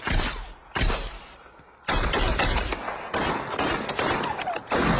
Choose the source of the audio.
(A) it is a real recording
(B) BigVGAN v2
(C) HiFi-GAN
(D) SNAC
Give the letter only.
A